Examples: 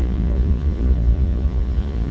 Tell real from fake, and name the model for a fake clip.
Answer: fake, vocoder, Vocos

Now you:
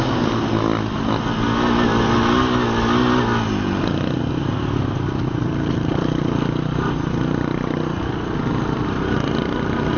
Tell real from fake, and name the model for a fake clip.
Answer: real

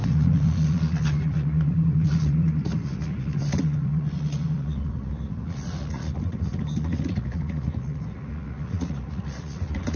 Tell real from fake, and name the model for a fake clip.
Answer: fake, vocoder, Vocos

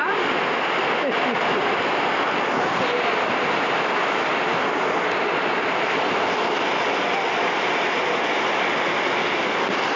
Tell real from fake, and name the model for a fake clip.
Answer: real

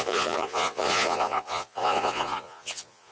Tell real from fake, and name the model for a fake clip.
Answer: fake, vocoder, Vocos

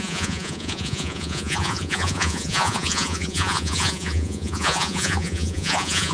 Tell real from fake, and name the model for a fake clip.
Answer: fake, vocoder, Vocos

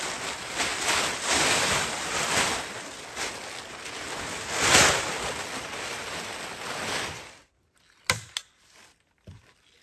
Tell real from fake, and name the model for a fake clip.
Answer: real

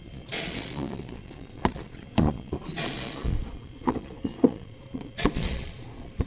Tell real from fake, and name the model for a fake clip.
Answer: fake, vocoder, Vocos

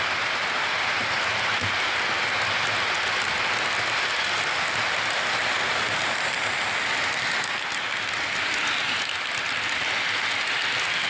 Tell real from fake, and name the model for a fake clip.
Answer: real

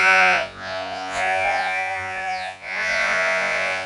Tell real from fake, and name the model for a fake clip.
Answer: fake, vocoder, Vocos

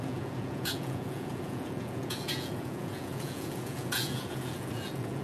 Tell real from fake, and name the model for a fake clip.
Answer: fake, vocoder, Vocos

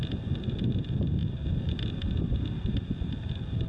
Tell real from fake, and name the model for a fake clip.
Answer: real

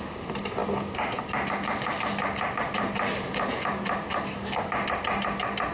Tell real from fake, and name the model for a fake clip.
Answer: real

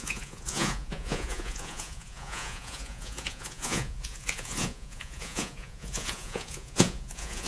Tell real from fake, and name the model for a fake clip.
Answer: fake, vocoder, Vocos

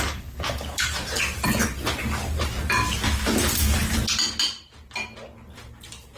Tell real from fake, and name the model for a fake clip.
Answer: real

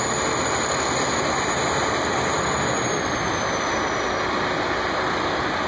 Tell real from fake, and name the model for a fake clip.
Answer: real